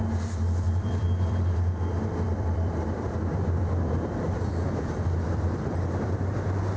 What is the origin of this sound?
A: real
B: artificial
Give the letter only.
B